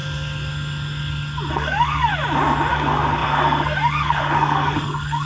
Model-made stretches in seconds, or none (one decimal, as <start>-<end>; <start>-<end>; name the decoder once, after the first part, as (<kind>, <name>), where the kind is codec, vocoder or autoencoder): 1.5-2.1 (codec, SNAC); 2.7-5.3